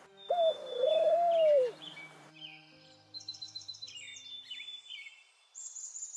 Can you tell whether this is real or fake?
fake